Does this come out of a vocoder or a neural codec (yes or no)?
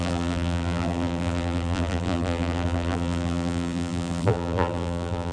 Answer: yes